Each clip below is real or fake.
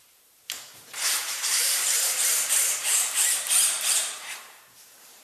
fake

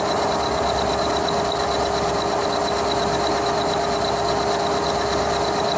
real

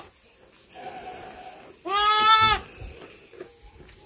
real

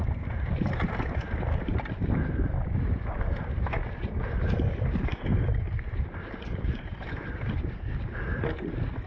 real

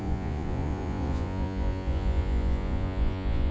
fake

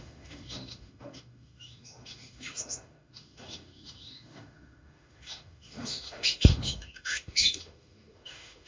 fake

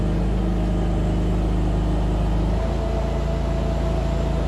real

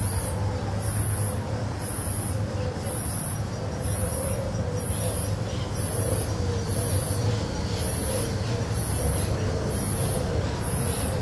real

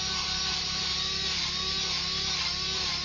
real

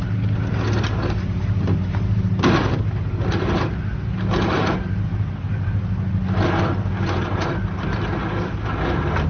real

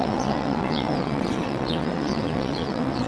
fake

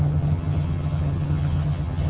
fake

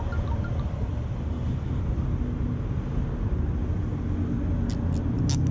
real